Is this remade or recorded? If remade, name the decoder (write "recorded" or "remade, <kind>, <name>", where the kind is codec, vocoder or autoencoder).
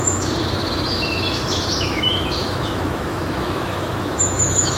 remade, autoencoder, DAC-VAE